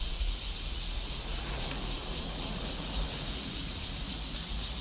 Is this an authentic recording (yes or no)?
no